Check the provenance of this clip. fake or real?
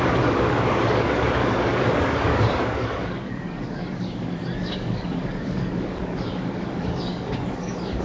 fake